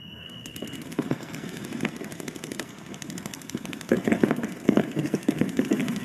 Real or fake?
fake